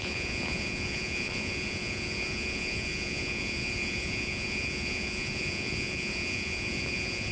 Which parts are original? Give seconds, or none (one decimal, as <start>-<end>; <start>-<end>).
none